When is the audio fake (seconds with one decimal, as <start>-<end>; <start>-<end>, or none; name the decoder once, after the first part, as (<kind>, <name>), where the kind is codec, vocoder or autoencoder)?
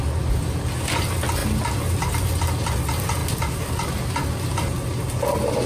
3.2-4.4 (vocoder, BigVGAN v2)